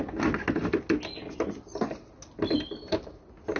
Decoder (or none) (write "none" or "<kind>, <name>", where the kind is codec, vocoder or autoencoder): none